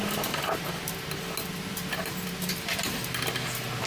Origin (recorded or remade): recorded